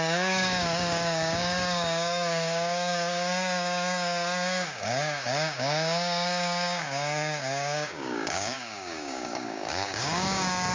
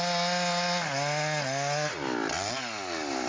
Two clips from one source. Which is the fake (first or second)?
first